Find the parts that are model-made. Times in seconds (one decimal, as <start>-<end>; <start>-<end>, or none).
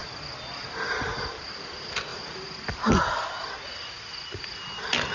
none